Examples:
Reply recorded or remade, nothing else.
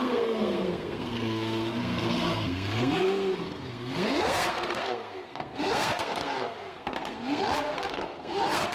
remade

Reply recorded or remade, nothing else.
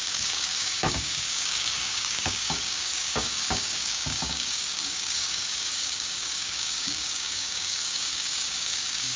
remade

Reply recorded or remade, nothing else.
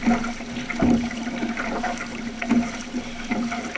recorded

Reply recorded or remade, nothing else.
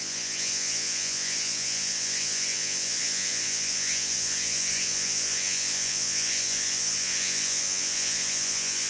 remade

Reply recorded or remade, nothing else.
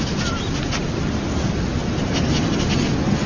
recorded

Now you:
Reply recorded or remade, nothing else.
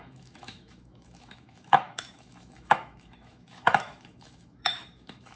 remade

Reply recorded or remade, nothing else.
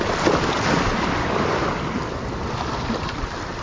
recorded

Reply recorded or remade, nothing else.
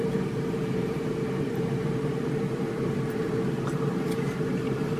remade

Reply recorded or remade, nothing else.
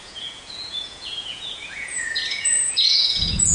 remade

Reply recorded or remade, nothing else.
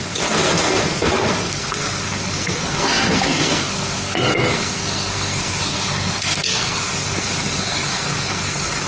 remade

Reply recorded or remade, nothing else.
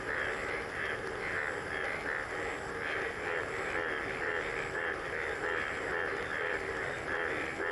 recorded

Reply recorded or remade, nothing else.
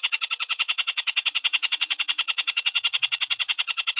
remade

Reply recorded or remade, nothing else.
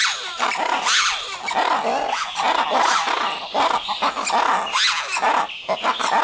recorded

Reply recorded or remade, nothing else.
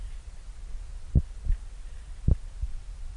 recorded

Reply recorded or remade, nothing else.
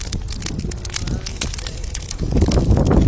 recorded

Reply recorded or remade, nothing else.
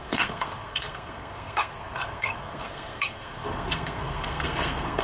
remade